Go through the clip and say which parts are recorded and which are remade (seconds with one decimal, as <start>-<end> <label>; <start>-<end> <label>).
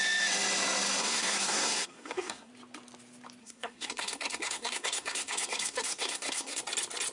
0.0-1.0 recorded; 1.0-2.5 remade; 2.5-3.4 recorded; 3.4-6.6 remade; 6.6-7.1 recorded